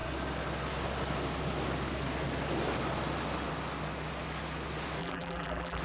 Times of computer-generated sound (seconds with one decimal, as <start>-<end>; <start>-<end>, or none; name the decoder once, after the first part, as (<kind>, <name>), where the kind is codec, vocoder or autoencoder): 5.0-5.8 (vocoder, BigVGAN v2)